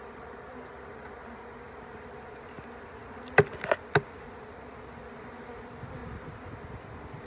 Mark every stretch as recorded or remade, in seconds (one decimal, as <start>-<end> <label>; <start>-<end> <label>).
0.0-7.3 recorded